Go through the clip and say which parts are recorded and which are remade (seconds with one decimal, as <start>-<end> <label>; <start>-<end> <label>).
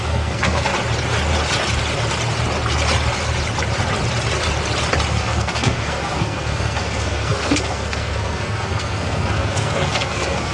0.0-0.7 remade; 0.7-5.1 recorded; 5.1-10.5 remade